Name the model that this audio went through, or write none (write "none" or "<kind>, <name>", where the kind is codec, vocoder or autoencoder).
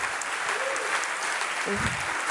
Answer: none